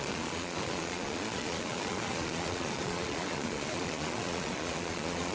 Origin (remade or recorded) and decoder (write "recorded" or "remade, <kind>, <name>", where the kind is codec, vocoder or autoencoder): remade, vocoder, Vocos